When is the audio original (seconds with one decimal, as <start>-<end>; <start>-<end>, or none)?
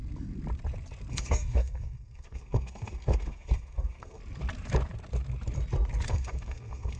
0.0-1.1; 4.2-6.1